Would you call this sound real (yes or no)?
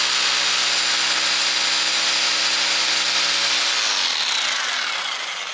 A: yes